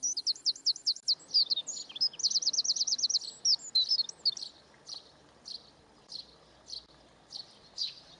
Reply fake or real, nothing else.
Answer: real